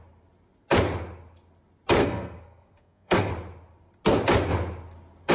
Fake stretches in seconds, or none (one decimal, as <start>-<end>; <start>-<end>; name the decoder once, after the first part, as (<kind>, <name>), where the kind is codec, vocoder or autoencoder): 2.0-3.3 (codec, SNAC)